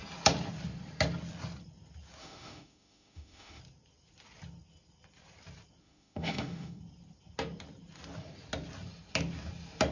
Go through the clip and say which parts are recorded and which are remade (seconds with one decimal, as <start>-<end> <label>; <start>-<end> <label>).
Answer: 0.0-2.2 recorded; 2.2-3.6 remade; 3.6-5.8 recorded; 5.8-6.8 remade; 6.8-9.9 recorded

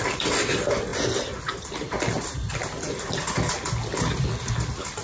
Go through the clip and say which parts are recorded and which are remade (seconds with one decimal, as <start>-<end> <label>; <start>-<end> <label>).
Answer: 0.0-5.0 recorded

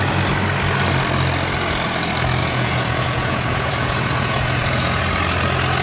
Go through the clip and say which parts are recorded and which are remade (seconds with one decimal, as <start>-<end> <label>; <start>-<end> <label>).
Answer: 0.0-2.4 recorded; 2.4-5.0 remade; 5.0-5.8 recorded

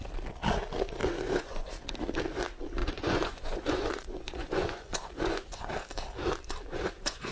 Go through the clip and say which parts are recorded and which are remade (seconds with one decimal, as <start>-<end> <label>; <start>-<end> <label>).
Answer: 0.0-1.0 recorded; 1.0-1.7 remade; 1.7-2.8 recorded; 2.8-5.7 remade; 5.7-6.7 recorded; 6.7-7.3 remade

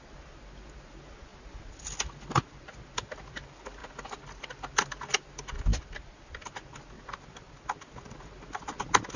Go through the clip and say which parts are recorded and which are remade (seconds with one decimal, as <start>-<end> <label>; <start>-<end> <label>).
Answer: 0.0-9.2 recorded

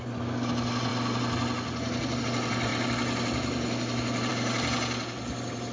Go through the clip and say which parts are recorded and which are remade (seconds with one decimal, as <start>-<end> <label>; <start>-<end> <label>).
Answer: 0.0-5.7 recorded